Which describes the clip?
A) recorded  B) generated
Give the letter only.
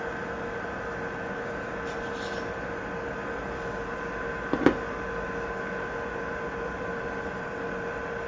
A